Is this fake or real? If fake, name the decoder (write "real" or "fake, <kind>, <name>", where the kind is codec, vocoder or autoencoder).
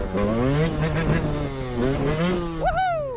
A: real